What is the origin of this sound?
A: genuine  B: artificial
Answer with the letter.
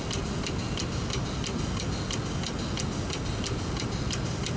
A